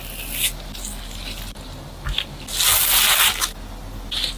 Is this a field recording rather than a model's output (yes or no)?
yes